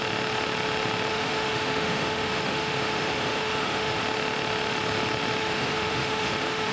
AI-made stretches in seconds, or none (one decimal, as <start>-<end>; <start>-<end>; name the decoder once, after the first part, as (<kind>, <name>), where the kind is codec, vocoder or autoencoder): 1.1-4.0 (autoencoder, DAC-VAE); 5.4-6.7